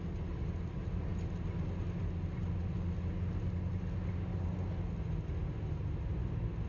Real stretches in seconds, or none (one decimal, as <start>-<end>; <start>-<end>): 0.0-6.7